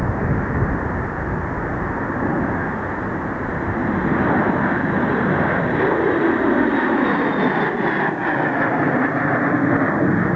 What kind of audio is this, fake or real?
real